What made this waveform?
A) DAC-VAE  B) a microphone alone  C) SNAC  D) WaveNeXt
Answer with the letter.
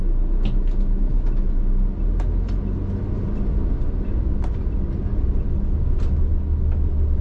B